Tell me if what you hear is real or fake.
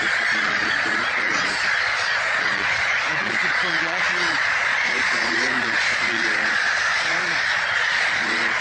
fake